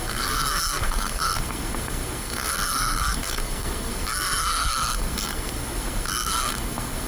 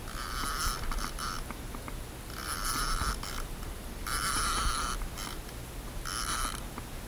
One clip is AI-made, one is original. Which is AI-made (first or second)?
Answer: first